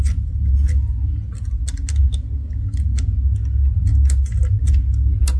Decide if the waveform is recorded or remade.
recorded